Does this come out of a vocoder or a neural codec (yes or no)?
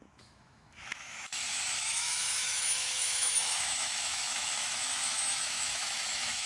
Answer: yes